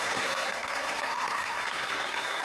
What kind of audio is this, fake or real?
fake